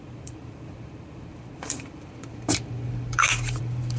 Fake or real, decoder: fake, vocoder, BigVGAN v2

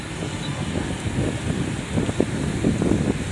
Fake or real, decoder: real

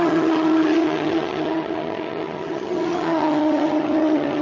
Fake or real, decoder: fake, vocoder, HiFi-GAN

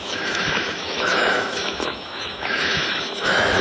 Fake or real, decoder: fake, autoencoder, DAC-VAE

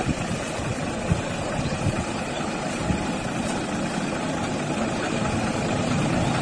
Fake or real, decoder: real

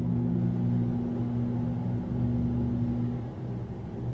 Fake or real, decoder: real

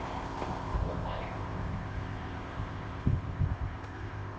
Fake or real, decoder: fake, codec, ZipCodec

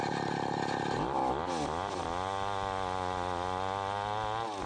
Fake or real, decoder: real